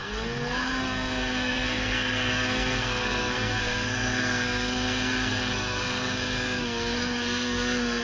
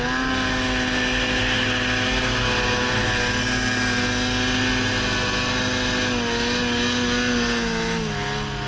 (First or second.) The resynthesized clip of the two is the first